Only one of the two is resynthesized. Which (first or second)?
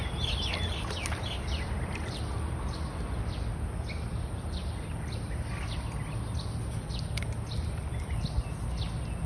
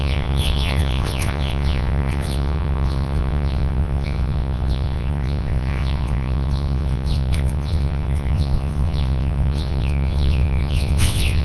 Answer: second